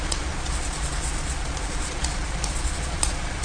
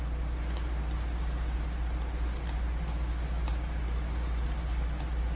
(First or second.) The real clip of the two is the second